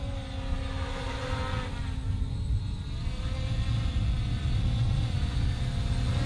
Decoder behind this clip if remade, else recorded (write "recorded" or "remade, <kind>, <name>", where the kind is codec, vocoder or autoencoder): recorded